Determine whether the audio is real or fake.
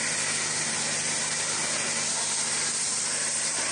real